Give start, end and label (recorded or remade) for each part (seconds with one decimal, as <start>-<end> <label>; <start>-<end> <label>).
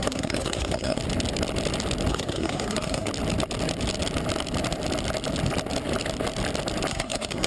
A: 0.0-1.0 remade; 1.0-2.1 recorded; 2.1-3.1 remade; 3.1-6.9 recorded; 6.9-7.5 remade